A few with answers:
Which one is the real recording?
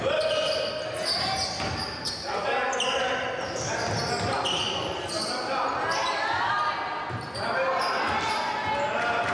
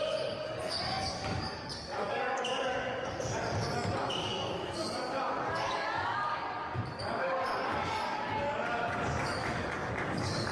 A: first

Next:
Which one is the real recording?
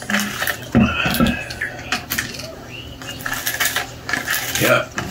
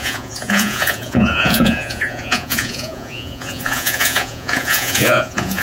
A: first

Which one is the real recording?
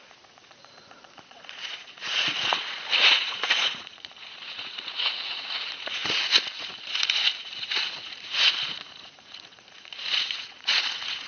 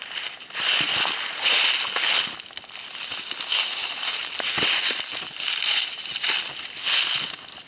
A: second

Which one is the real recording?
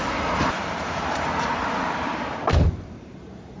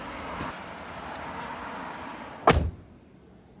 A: second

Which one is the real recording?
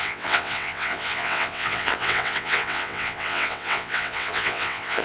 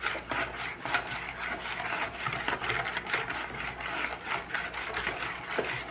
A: second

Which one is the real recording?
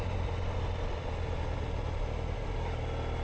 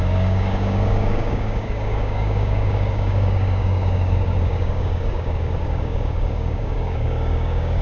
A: first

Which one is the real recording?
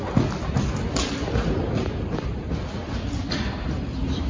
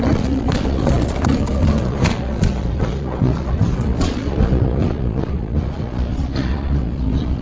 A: first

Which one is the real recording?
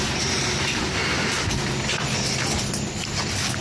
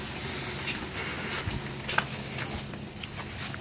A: second